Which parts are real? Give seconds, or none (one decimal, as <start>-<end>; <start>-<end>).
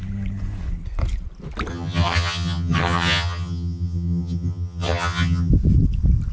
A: 0.0-1.7; 5.5-6.3